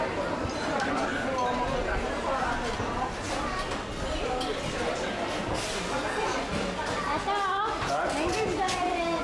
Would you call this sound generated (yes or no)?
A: no